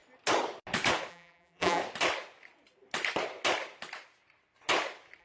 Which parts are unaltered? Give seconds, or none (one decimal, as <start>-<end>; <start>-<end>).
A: 0.0-1.1; 1.8-5.2